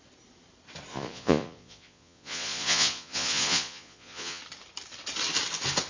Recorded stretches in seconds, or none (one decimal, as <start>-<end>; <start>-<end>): 0.0-0.9; 4.4-5.9